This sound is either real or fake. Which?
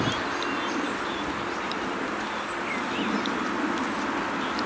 real